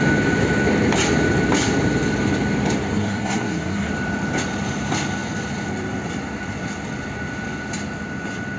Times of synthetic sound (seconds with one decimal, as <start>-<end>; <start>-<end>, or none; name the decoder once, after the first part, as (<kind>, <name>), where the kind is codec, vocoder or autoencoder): 2.9-3.9 (codec, SNAC)